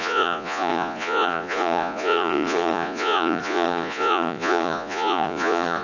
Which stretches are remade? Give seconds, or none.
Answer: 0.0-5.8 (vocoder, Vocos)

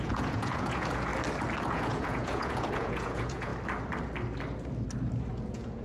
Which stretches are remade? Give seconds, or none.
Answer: 0.0-1.1 (vocoder, Vocos); 1.7-3.5; 5.3-5.8